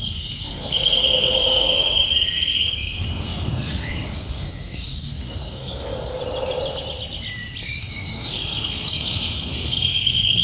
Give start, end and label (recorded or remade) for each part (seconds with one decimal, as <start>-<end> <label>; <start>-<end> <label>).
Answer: 0.0-6.2 remade; 6.2-7.8 recorded; 7.8-10.4 remade